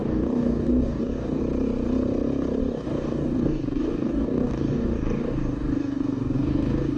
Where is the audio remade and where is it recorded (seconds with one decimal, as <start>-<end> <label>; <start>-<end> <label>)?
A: 0.0-1.4 remade; 1.4-2.6 recorded; 2.6-7.0 remade